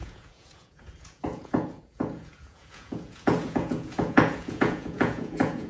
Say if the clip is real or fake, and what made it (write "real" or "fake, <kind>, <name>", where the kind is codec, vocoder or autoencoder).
fake, vocoder, Vocos